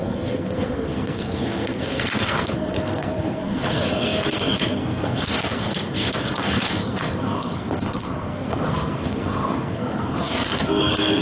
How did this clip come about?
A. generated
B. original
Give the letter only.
A